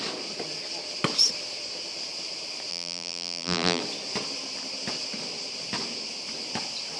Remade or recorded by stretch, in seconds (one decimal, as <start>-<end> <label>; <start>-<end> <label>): 0.0-2.7 recorded; 2.7-3.8 remade; 3.8-7.0 recorded